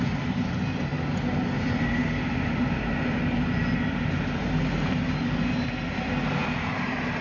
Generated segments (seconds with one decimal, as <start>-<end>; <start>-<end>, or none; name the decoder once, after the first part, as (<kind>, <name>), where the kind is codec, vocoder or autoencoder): none